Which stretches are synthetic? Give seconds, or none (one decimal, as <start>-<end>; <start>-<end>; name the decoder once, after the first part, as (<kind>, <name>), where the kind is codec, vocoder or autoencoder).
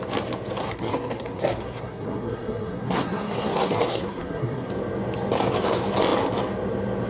0.6-4.7 (codec, SNAC)